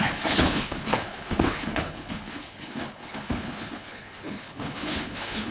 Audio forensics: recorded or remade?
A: remade